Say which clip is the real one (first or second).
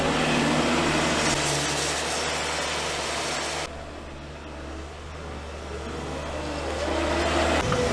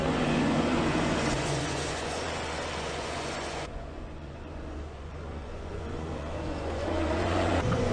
first